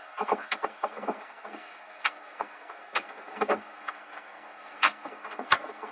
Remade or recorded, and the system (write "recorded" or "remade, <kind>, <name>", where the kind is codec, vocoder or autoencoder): remade, codec, SNAC